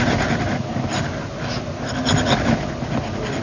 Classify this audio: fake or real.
real